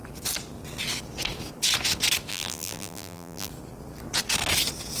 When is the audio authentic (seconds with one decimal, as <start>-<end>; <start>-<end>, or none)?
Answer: 0.0-2.3; 3.5-5.0